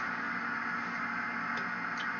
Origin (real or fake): real